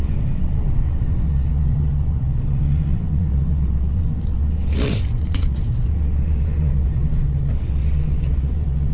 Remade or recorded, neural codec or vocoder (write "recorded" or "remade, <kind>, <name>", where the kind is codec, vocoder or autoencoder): remade, vocoder, WaveNeXt